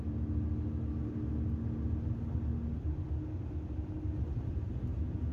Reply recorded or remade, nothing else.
recorded